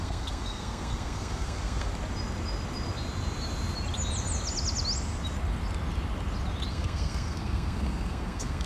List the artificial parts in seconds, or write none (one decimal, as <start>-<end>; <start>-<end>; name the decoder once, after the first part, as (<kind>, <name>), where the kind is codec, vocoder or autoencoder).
0.0-1.9 (codec, SNAC); 6.7-8.7